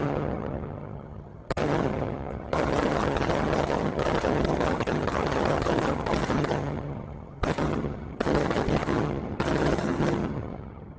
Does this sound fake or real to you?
fake